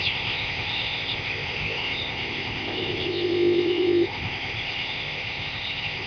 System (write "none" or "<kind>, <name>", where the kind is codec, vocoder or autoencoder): codec, ZipCodec